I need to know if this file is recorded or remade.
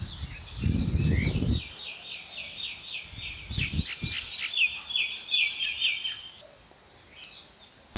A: recorded